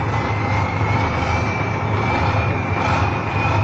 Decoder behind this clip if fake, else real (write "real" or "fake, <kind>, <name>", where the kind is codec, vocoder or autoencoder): real